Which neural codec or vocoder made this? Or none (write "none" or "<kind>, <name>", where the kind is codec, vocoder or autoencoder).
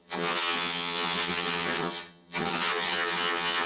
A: vocoder, HiFi-GAN